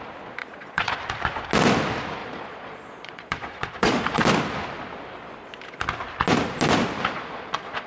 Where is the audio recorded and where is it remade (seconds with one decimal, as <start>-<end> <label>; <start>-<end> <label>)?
0.0-0.4 recorded; 0.4-1.0 remade; 1.0-2.2 recorded; 2.2-4.2 remade; 4.2-7.1 recorded; 7.1-7.9 remade